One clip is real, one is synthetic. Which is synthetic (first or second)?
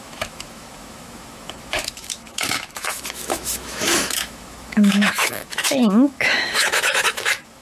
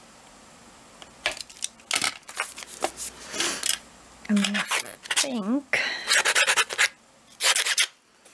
first